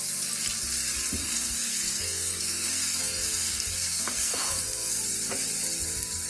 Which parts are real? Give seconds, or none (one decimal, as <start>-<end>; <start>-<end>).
0.0-1.2; 5.0-6.3